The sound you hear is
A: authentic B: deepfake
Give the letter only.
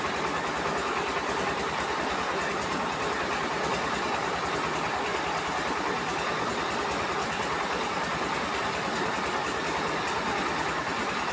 A